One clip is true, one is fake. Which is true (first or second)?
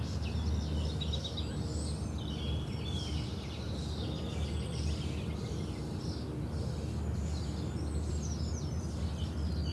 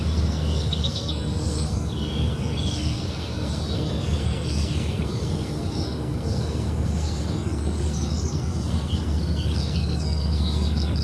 first